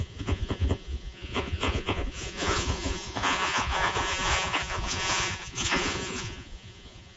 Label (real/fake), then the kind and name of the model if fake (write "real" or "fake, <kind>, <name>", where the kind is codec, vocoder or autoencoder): fake, vocoder, Vocos